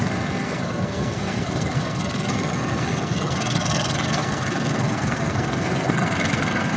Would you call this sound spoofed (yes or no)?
yes